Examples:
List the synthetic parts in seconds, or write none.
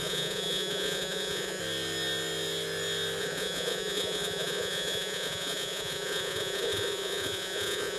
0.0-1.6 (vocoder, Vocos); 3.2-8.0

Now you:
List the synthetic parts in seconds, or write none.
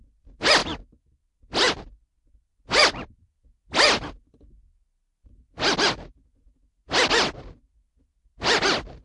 none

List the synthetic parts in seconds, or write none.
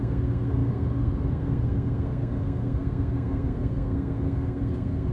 0.0-5.1 (codec, SNAC)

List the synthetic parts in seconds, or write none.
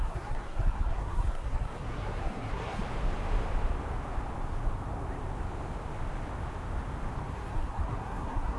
0.0-2.8 (codec, SNAC); 7.3-8.6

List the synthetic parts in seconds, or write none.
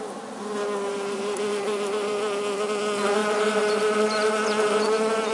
0.9-2.1 (vocoder, BigVGAN v2); 3.2-3.8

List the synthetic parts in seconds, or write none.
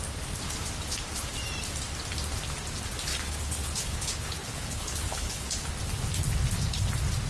3.1-5.7 (codec, HILCodec)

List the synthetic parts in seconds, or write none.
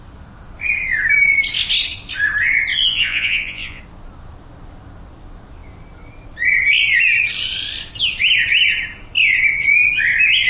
2.7-3.8 (vocoder, Vocos)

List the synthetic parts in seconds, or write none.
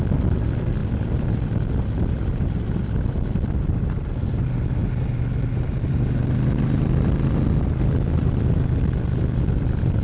none